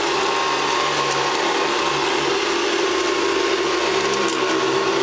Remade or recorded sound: recorded